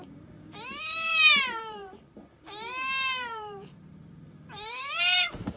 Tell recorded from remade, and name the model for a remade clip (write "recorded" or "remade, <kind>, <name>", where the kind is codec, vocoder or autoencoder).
remade, vocoder, BigVGAN v2